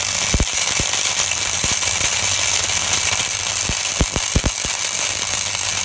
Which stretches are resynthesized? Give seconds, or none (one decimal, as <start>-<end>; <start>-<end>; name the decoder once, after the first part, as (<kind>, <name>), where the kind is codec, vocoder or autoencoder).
0.5-3.2 (vocoder, BigVGAN v2)